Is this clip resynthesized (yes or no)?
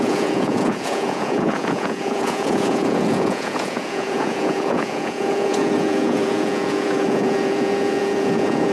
yes